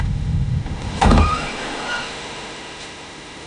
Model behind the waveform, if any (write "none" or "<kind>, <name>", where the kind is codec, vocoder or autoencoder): autoencoder, DAC-VAE